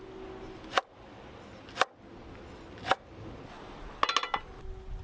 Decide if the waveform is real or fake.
real